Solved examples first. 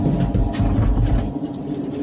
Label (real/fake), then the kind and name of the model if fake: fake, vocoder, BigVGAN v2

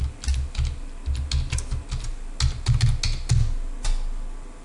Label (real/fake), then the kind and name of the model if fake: real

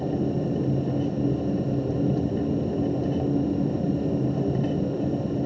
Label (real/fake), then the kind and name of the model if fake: real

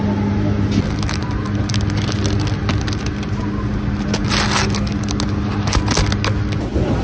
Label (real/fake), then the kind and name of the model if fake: real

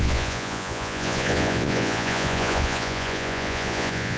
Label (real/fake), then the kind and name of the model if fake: fake, vocoder, Vocos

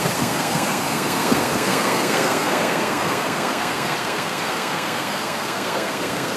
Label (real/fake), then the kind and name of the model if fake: fake, codec, SNAC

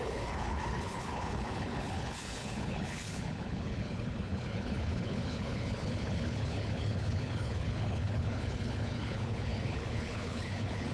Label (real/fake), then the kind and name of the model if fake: fake, codec, HILCodec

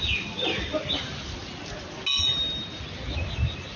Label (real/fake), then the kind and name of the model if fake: real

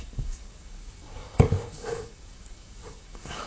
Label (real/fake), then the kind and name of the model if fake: fake, codec, DAC